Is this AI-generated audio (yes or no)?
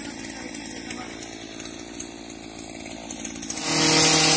no